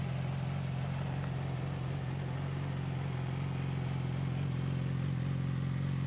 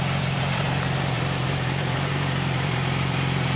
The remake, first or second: second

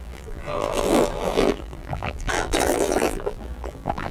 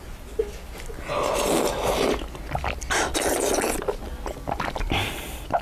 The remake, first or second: first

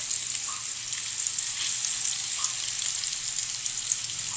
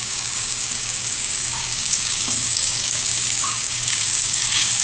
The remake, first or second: second